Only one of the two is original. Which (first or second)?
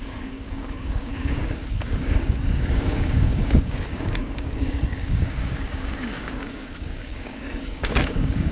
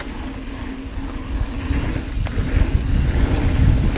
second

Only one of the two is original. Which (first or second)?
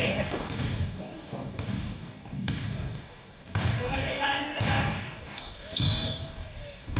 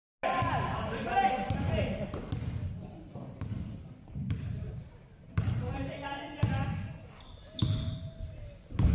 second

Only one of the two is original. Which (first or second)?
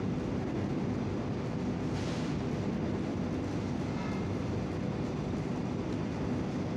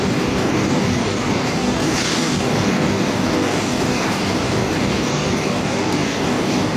first